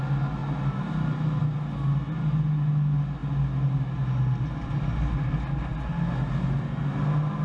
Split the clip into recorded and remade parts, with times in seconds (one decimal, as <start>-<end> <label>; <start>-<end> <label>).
0.0-7.4 recorded